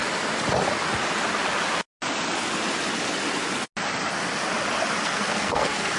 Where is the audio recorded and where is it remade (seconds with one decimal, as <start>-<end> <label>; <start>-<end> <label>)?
0.0-5.0 recorded; 5.0-6.0 remade